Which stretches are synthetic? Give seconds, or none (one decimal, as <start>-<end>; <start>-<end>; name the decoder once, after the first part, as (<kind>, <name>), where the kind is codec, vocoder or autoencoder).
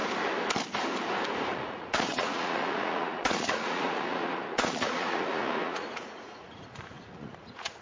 1.5-7.8 (vocoder, Vocos)